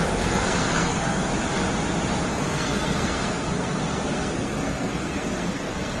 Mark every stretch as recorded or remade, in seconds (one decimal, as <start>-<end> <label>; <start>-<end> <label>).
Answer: 0.0-1.3 remade; 1.3-2.3 recorded; 2.3-6.0 remade